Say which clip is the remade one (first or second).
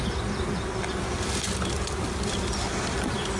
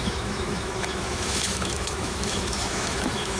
second